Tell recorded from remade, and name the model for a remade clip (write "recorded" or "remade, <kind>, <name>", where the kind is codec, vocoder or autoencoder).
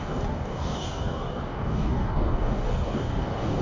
remade, codec, DAC